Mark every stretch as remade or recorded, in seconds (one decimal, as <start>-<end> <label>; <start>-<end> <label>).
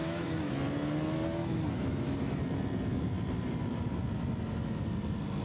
0.0-0.5 remade; 0.5-1.4 recorded; 1.4-2.4 remade; 2.4-5.4 recorded